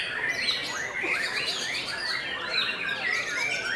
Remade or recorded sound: recorded